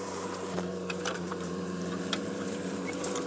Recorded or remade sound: remade